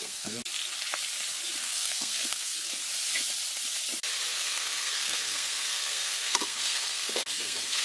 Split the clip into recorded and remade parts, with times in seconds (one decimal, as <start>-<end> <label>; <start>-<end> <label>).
0.0-0.4 remade; 0.4-1.6 recorded; 1.6-2.8 remade; 2.8-4.3 recorded; 4.3-7.8 remade